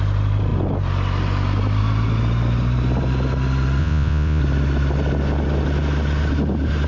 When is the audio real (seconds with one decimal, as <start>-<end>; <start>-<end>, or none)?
0.0-3.8; 4.4-6.9